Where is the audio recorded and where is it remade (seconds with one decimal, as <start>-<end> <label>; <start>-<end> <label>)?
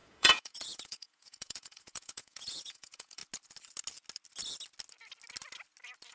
0.0-3.2 remade; 3.2-6.1 recorded